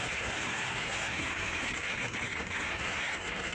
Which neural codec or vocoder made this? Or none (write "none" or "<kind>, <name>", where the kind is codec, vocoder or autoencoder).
codec, SNAC